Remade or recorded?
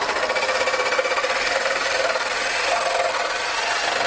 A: recorded